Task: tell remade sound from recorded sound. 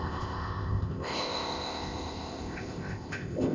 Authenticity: remade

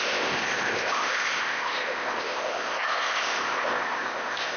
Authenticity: remade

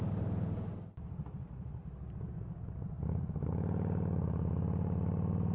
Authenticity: recorded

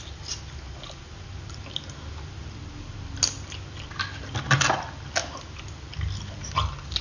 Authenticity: recorded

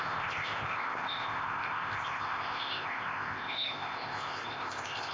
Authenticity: remade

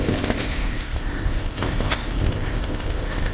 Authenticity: remade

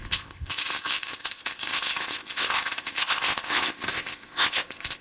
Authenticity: remade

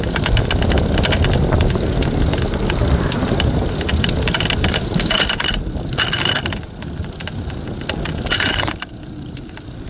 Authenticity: recorded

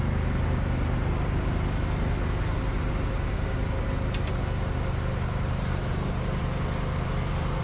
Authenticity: recorded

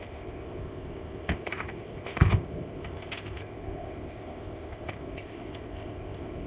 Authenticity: remade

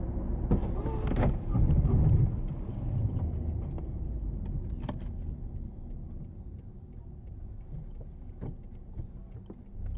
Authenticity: recorded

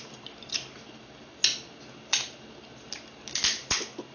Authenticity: recorded